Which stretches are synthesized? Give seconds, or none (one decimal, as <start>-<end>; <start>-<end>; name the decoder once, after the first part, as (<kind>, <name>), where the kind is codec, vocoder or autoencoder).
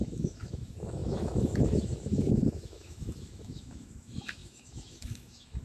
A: 0.0-5.6 (autoencoder, DAC-VAE)